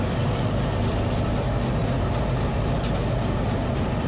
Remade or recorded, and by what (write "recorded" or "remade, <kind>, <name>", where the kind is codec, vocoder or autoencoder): recorded